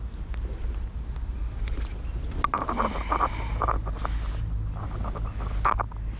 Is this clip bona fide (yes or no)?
yes